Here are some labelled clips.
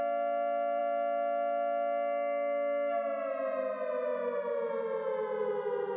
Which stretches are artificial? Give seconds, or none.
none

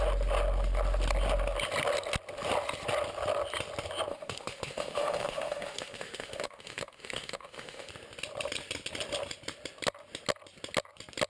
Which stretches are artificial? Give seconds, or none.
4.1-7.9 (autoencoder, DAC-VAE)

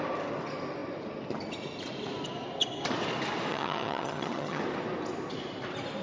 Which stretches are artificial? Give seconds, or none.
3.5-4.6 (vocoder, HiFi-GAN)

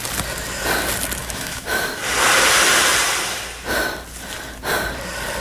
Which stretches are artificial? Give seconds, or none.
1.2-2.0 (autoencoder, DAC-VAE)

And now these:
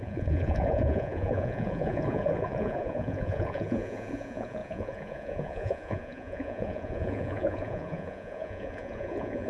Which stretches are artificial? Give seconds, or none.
0.0-9.5 (vocoder, Vocos)